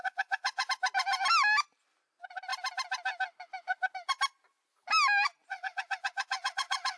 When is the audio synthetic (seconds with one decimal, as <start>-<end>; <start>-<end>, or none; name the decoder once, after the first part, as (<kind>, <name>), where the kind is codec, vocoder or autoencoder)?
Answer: 0.0-0.7 (vocoder, WaveNeXt); 5.5-7.0